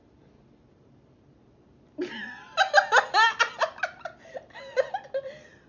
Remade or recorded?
recorded